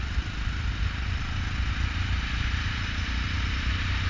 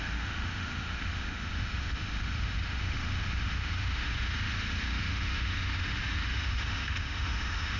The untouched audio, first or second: first